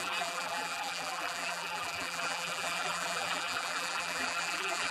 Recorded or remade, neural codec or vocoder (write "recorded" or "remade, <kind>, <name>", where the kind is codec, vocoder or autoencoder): remade, vocoder, BigVGAN v2